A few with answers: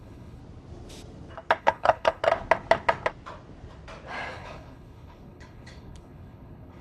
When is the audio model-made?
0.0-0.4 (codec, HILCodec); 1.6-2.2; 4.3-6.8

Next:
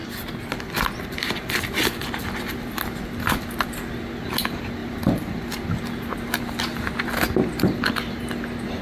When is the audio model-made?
none

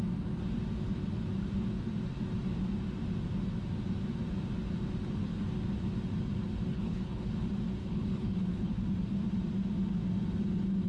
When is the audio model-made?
6.7-7.3 (codec, HILCodec); 7.8-8.7

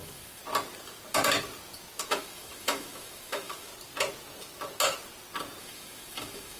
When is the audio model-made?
0.0-0.4 (autoencoder, DAC-VAE); 2.1-3.7; 5.6-6.6

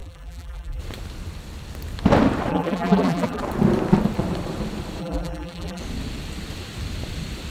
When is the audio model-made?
0.0-0.8 (vocoder, BigVGAN v2); 2.5-3.4; 5.0-5.8

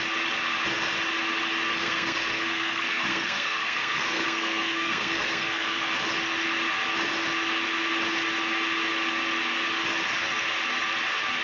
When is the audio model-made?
1.7-5.9 (codec, SNAC)